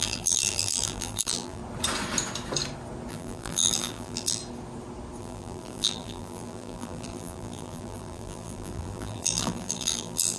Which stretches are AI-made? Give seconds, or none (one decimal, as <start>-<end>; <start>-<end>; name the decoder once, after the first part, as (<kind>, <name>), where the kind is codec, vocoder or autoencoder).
0.0-1.6 (vocoder, BigVGAN v2); 3.1-4.4; 5.2-10.4